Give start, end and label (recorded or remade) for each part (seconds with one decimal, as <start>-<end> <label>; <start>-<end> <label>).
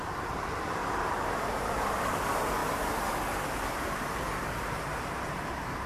0.0-2.6 remade; 2.6-3.8 recorded; 3.8-5.9 remade